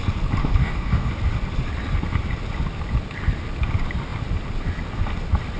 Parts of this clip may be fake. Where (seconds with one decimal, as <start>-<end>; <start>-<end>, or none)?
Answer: 0.4-1.1